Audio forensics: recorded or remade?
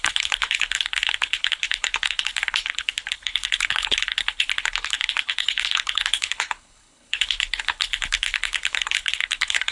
remade